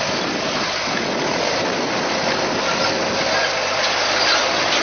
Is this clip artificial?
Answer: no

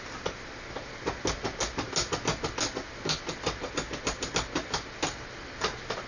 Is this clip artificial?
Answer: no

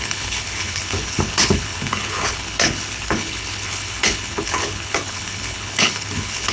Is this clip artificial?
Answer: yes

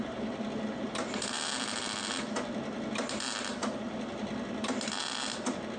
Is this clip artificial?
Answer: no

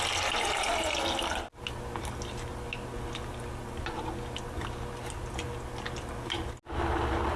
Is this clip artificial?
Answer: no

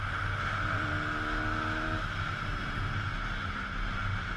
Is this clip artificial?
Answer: no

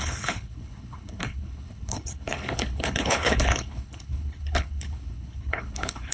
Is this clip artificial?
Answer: yes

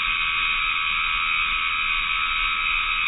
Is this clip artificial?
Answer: no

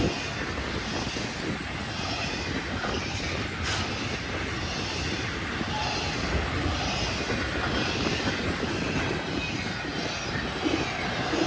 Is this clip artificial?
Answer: no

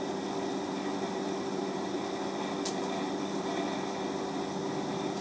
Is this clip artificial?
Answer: no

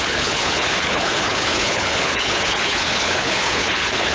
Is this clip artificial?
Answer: yes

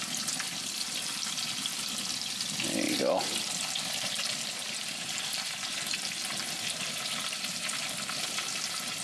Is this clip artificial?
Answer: no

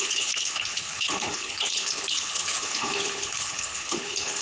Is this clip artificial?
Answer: yes